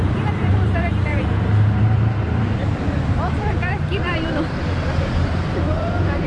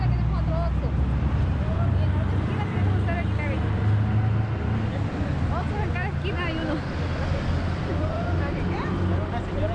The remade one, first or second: first